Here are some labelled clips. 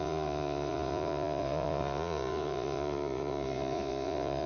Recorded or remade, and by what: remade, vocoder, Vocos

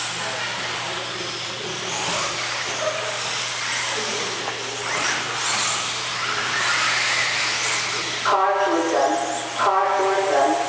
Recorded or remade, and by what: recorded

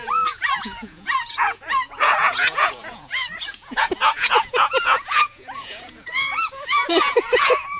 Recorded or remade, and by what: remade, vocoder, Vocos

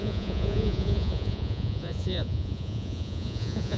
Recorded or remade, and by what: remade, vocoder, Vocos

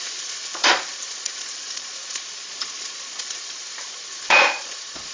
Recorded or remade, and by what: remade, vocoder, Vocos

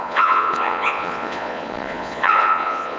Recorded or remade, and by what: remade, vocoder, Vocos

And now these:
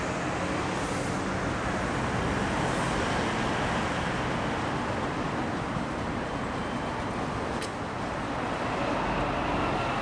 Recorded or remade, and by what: recorded